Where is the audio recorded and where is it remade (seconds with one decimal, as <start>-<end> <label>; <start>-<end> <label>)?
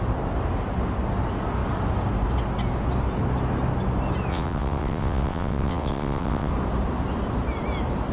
0.0-4.3 recorded; 4.3-6.5 remade; 6.5-8.1 recorded